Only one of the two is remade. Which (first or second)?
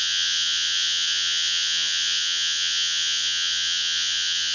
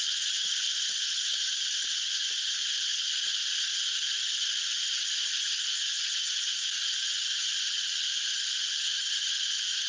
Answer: first